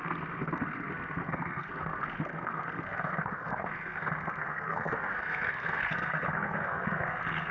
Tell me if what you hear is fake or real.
fake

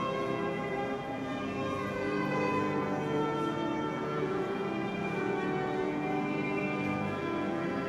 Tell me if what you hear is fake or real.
fake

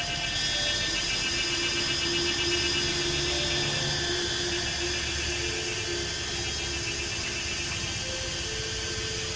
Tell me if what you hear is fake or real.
real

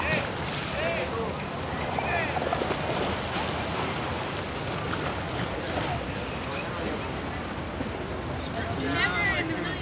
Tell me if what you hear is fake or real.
real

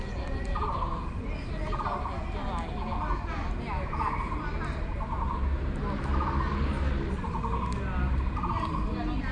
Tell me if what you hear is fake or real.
real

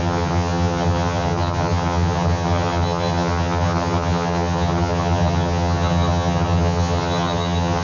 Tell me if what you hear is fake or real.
fake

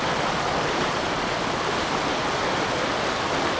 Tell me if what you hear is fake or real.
real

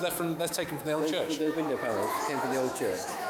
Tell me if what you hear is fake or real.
fake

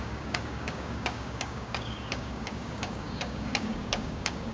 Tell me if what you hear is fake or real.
fake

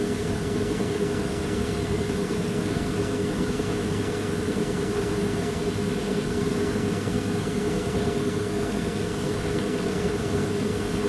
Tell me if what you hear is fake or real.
fake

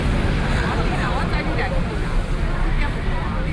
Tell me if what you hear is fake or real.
real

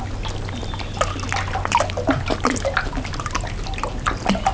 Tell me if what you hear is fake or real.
real